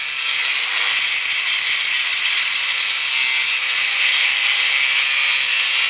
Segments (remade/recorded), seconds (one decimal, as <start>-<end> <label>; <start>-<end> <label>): 0.0-2.1 recorded; 2.1-2.6 remade; 2.6-5.9 recorded